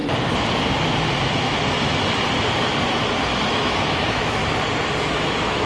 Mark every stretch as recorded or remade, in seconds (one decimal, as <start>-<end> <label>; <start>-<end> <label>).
0.0-3.4 recorded; 3.4-4.4 remade; 4.4-5.0 recorded; 5.0-5.7 remade